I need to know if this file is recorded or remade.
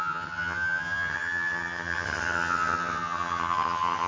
remade